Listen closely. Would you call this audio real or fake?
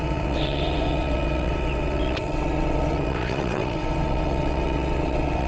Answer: fake